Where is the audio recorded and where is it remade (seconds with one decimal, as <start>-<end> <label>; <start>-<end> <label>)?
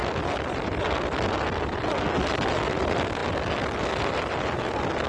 0.0-5.1 recorded